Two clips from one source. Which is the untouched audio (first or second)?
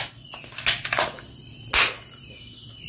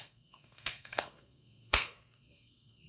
first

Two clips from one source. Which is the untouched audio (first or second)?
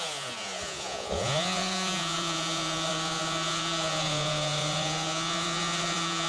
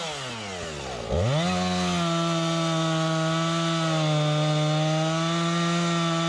second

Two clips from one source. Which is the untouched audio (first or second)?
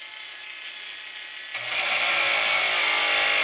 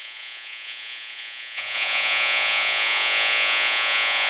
first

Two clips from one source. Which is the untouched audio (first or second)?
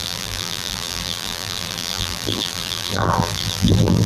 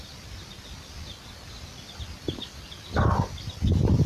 second